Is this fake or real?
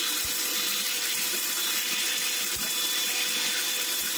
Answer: fake